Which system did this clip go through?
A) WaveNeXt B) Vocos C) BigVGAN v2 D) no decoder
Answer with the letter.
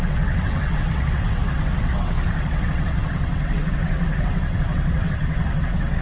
A